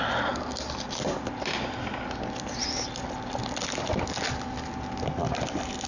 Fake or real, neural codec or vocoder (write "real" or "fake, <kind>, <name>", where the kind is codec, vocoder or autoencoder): real